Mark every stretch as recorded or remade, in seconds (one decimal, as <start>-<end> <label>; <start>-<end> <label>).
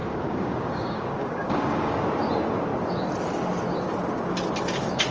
0.0-2.0 remade; 2.0-5.1 recorded